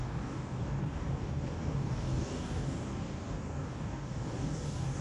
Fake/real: fake